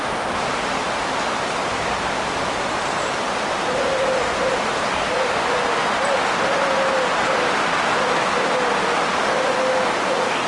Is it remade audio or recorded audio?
recorded